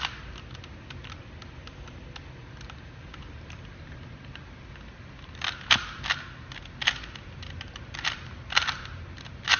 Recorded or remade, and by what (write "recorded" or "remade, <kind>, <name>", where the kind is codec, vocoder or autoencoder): recorded